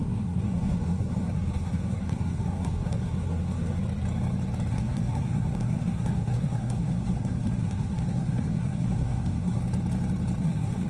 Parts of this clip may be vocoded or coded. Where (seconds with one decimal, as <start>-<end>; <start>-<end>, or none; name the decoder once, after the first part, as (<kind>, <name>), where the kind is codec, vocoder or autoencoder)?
0.0-3.8 (codec, SNAC); 4.7-9.6; 10.4-10.9